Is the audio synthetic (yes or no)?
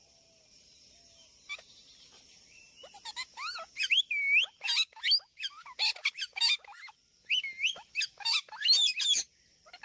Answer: no